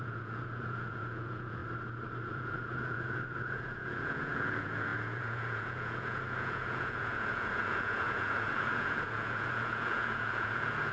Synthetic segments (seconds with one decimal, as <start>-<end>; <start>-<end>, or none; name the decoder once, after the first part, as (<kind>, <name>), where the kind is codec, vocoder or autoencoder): 0.0-1.6 (vocoder, Vocos); 2.3-10.9

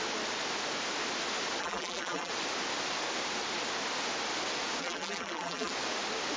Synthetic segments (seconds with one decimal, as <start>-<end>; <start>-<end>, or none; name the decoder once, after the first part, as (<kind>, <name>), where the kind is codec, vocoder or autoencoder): 1.6-2.3 (vocoder, BigVGAN v2); 4.8-5.7

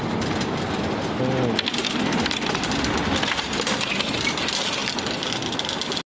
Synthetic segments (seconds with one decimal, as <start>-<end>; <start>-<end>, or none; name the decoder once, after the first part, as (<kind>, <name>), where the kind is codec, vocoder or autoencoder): none

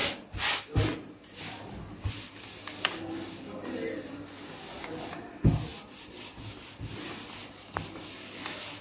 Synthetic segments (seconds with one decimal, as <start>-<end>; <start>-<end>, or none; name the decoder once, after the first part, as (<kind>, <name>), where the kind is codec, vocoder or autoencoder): none

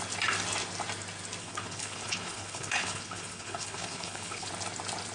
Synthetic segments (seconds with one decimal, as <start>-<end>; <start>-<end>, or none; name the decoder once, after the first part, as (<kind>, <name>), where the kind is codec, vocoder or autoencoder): 1.4-4.5 (codec, HILCodec)